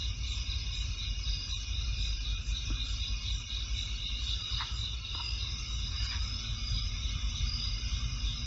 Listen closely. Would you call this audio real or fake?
fake